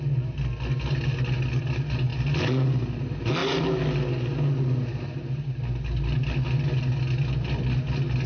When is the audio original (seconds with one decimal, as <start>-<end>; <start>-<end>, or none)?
0.0-8.3